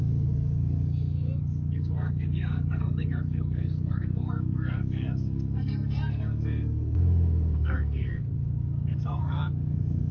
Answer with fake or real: fake